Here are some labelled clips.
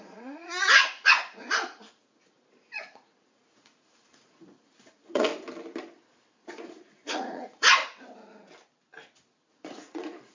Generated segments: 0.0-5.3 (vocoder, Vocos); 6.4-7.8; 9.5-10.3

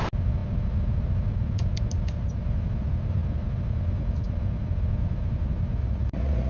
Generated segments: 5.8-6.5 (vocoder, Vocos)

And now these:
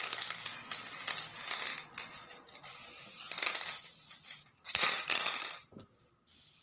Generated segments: none